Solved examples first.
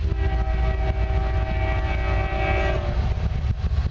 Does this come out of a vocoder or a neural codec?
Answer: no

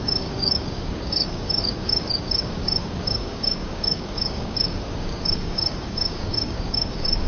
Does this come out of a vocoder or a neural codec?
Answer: yes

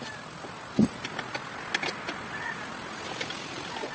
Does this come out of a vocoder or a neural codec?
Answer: no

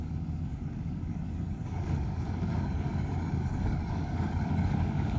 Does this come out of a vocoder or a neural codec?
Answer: yes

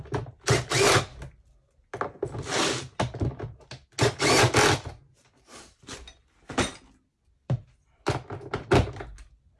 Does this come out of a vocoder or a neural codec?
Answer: no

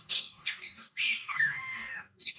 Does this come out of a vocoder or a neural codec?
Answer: yes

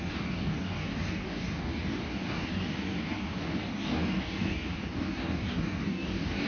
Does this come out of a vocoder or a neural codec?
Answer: yes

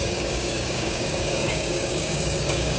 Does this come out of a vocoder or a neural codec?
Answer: yes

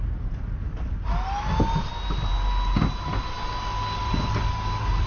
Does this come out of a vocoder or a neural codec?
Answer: no